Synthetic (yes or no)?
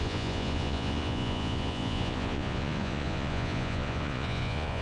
yes